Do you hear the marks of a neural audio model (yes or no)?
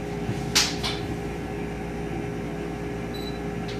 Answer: no